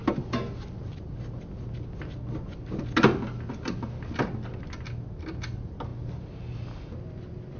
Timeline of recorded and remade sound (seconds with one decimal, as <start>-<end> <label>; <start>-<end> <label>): 0.0-7.6 recorded